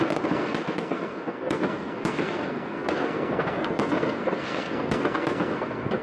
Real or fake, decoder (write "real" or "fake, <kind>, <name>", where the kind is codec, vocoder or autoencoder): fake, codec, SNAC